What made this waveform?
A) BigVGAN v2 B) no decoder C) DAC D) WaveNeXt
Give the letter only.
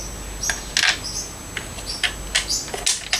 B